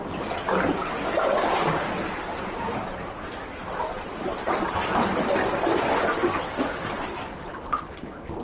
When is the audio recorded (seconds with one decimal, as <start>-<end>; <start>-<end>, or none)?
0.0-7.5